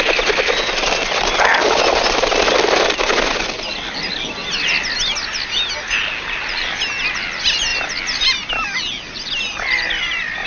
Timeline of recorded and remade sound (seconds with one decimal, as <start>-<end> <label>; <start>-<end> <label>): 0.0-10.5 recorded